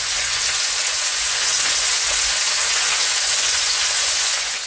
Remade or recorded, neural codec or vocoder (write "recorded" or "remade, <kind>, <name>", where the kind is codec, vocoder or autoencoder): remade, vocoder, Vocos